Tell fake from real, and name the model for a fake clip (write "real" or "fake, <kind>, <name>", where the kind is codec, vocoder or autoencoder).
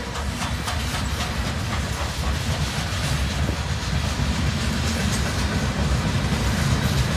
real